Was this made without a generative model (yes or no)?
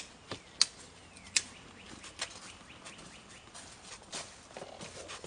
yes